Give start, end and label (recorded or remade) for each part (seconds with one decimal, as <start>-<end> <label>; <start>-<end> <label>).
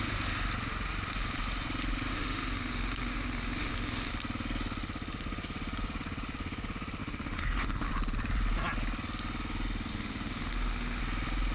0.0-2.1 recorded; 2.1-4.1 remade; 4.1-7.0 recorded; 7.0-7.9 remade; 7.9-9.9 recorded; 9.9-11.0 remade; 11.0-11.5 recorded